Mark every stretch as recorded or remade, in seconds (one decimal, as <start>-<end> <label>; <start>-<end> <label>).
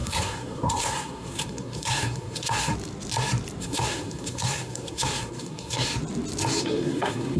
0.0-2.7 remade; 2.7-3.6 recorded; 3.6-5.9 remade; 5.9-6.6 recorded; 6.6-7.4 remade